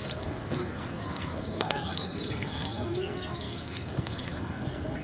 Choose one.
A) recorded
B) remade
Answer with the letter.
B